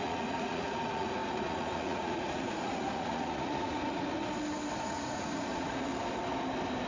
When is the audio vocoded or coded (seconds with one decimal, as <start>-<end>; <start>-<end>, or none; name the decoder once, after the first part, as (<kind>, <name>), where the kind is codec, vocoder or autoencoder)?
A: 0.0-4.2 (vocoder, Vocos); 4.8-5.9

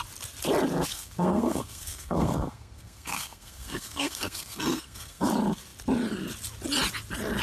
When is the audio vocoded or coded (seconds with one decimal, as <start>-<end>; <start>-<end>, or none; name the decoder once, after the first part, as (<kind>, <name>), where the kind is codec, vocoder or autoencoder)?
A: 0.9-5.3 (codec, SNAC)

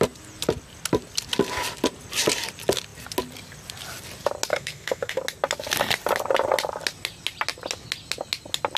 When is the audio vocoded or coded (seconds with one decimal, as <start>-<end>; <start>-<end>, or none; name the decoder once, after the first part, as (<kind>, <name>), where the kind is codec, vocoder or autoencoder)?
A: 4.5-5.2 (codec, SNAC)

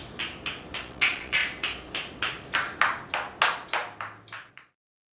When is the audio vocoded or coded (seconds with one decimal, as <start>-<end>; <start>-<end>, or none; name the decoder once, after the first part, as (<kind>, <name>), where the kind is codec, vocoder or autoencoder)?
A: 0.8-1.4 (vocoder, Vocos); 4.5-5.2

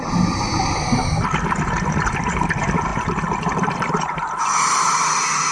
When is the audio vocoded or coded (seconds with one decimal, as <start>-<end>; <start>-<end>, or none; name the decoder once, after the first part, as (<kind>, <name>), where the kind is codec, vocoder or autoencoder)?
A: none

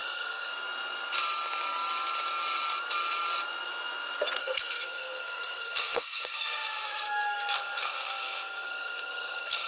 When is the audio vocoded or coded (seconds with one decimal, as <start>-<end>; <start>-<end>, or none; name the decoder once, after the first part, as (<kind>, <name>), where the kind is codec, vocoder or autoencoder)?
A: 0.0-0.5 (codec, SNAC); 4.4-9.7